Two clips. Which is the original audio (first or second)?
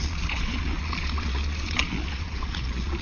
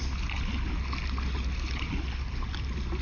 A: second